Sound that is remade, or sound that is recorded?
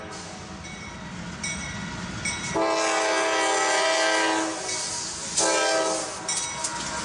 recorded